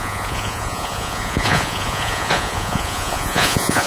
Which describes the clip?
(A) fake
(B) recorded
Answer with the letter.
A